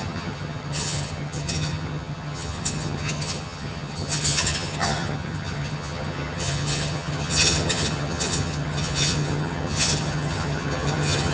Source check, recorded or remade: remade